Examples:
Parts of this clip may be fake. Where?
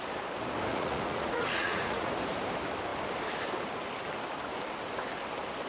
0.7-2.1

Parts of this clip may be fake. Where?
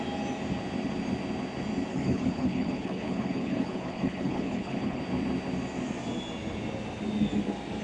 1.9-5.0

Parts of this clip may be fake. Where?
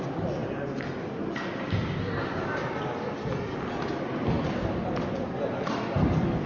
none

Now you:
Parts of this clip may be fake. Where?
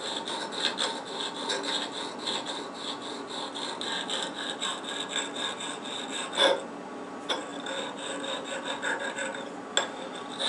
none